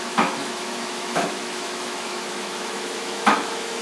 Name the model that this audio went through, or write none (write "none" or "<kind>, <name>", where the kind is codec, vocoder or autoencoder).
autoencoder, DAC-VAE